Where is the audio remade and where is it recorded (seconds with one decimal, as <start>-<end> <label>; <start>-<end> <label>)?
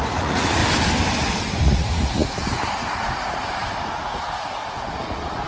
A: 0.0-0.6 remade; 0.6-1.5 recorded; 1.5-5.5 remade